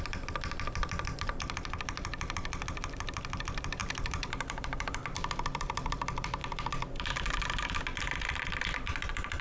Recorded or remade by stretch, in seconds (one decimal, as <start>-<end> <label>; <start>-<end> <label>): 0.0-6.4 remade; 6.4-8.3 recorded; 8.3-9.4 remade